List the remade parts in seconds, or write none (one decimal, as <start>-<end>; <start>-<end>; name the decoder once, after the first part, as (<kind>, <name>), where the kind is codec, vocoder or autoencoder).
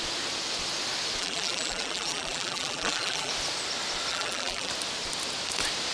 1.2-3.3 (vocoder, BigVGAN v2); 4.1-4.7